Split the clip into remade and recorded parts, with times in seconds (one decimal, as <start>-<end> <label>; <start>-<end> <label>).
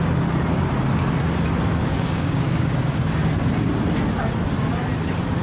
0.0-1.9 recorded; 1.9-2.7 remade; 2.7-5.4 recorded